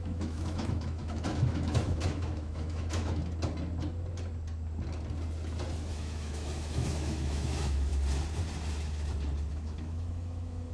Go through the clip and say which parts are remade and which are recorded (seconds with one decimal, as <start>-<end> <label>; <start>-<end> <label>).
0.0-3.2 remade; 3.2-5.9 recorded; 5.9-7.9 remade; 7.9-9.5 recorded; 9.5-10.7 remade